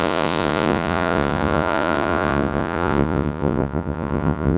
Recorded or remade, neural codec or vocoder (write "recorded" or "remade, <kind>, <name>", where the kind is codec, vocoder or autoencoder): remade, vocoder, Vocos